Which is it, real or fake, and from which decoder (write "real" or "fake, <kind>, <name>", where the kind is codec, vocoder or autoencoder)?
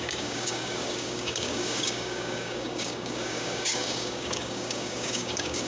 fake, codec, DAC